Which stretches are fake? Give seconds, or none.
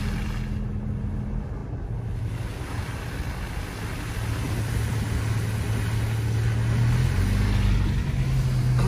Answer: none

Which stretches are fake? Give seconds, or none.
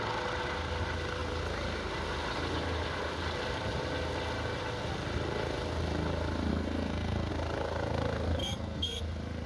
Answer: 6.5-7.3 (codec, SNAC); 8.4-9.0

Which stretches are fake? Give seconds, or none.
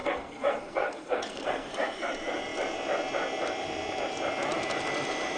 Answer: 0.0-2.1 (codec, SNAC)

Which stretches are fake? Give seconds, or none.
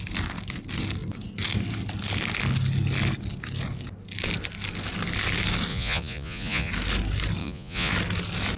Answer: 5.7-6.7 (vocoder, Vocos); 7.4-7.9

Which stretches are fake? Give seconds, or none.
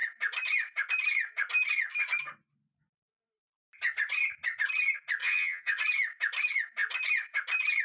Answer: 5.2-5.8 (vocoder, HiFi-GAN)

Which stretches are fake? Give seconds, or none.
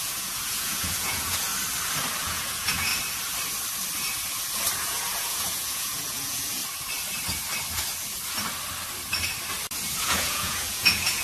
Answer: 0.0-1.5 (vocoder, Vocos); 2.2-2.9; 4.8-6.6; 10.0-11.2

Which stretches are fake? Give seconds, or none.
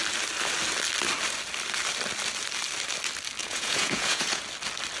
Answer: 3.4-4.4 (vocoder, Vocos)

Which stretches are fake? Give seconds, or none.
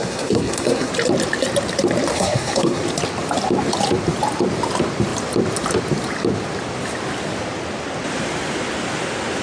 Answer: 0.0-0.9 (codec, SNAC); 2.1-2.8